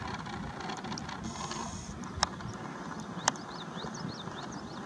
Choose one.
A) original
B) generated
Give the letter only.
A